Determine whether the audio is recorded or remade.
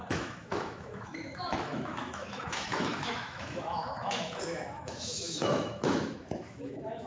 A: remade